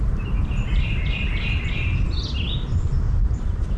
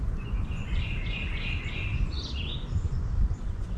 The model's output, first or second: second